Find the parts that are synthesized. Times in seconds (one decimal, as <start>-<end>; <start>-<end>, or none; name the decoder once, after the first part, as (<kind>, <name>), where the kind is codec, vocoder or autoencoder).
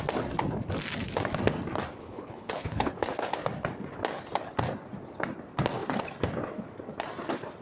2.0-2.9 (codec, HILCodec)